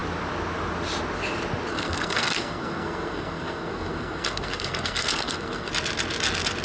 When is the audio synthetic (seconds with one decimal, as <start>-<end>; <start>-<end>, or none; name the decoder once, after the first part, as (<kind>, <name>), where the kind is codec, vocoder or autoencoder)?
1.7-5.7 (codec, SNAC)

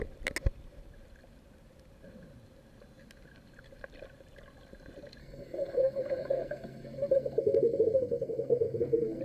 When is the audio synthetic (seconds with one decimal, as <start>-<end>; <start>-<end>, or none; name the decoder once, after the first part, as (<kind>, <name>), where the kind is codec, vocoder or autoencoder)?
5.2-9.2 (codec, SNAC)

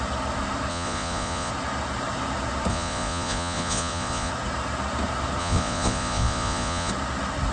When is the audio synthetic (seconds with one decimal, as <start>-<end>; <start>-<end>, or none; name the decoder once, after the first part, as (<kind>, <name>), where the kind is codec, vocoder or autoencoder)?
0.7-1.5 (vocoder, Vocos); 2.7-4.3; 5.4-6.9

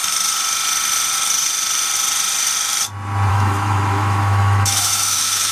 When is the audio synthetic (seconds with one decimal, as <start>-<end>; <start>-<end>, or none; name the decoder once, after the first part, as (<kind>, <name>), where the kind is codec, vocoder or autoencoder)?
3.3-5.5 (autoencoder, DAC-VAE)

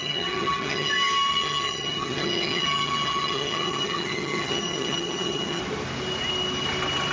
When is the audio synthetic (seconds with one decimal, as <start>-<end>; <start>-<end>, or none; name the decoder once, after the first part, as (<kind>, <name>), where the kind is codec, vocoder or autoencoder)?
0.0-0.9 (vocoder, HiFi-GAN); 1.3-5.6

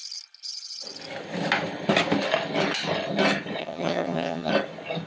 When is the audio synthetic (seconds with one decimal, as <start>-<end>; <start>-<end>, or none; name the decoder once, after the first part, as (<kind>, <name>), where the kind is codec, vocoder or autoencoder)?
3.6-4.5 (vocoder, HiFi-GAN)